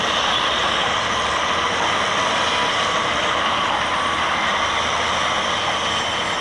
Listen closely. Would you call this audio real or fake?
real